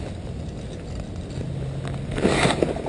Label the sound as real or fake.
real